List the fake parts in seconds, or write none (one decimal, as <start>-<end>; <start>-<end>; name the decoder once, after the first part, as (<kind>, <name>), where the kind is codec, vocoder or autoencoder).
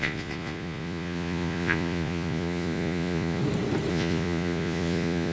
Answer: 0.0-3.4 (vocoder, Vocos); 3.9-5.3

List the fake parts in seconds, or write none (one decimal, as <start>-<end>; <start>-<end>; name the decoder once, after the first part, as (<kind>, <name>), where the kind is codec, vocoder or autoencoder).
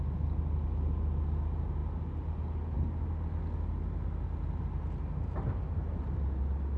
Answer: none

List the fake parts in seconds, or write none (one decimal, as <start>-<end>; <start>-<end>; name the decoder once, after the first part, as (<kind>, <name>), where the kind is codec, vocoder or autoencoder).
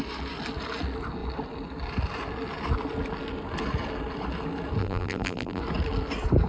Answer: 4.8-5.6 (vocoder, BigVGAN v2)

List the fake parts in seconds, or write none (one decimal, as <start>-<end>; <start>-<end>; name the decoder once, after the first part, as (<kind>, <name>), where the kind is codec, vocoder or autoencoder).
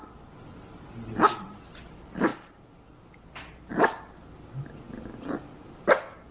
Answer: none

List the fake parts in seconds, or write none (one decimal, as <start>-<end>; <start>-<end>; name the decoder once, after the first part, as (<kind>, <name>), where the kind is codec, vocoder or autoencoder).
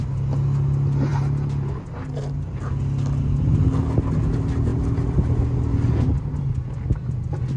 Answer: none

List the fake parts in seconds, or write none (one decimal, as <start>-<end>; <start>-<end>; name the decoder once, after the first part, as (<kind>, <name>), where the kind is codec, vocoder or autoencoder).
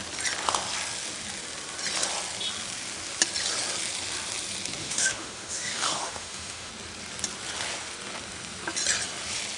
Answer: 4.8-6.7 (autoencoder, DAC-VAE)